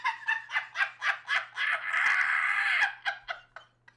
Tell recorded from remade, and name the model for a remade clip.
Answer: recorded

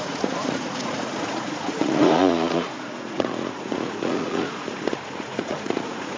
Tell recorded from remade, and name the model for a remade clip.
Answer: remade, vocoder, Vocos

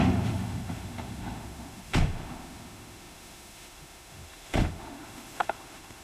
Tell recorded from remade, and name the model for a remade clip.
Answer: remade, autoencoder, DAC-VAE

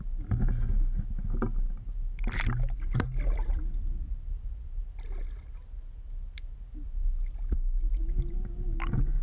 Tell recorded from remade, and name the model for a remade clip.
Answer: recorded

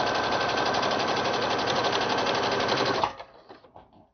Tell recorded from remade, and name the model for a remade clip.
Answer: recorded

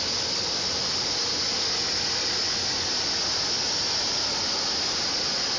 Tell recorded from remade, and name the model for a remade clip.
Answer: recorded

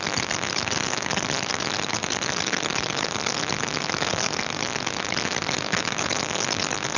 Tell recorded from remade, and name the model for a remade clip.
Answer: recorded